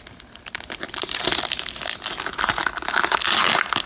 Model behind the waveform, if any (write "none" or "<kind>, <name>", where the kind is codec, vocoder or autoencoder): none